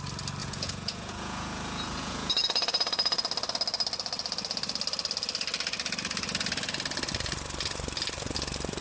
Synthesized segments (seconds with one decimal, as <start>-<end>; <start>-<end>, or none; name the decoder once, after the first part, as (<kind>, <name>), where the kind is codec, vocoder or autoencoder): 0.4-2.3 (vocoder, Vocos)